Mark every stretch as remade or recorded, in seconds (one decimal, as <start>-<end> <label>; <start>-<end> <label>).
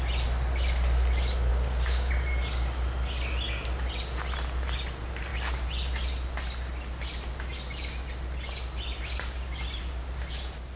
0.0-1.5 recorded; 1.5-2.1 remade; 2.1-10.8 recorded